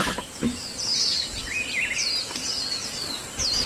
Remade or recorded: recorded